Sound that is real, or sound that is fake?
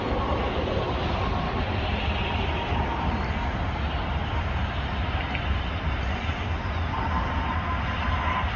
real